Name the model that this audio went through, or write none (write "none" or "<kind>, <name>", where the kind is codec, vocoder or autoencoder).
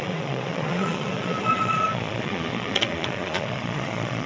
vocoder, Vocos